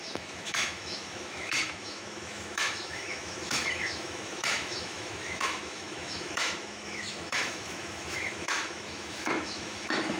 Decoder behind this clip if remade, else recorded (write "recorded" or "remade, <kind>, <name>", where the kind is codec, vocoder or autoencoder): remade, autoencoder, DAC-VAE